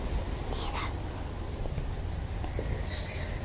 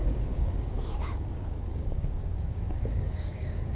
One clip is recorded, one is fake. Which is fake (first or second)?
second